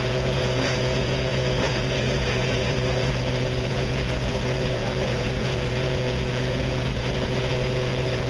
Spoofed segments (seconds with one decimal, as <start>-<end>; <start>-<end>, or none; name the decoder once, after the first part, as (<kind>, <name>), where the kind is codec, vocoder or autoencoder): 0.0-8.3 (vocoder, Vocos)